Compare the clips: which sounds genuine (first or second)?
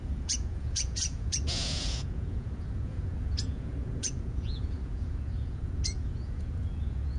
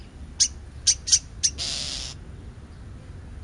second